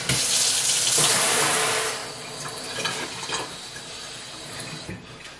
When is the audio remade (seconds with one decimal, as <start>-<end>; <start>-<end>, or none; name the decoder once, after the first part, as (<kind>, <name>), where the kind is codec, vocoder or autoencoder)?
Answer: none